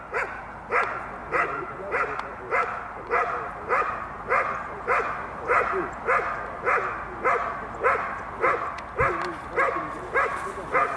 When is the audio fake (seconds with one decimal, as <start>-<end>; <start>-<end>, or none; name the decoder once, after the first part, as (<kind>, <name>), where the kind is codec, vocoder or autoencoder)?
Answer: 1.2-5.9 (vocoder, BigVGAN v2)